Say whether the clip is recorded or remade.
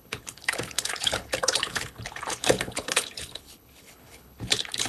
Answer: remade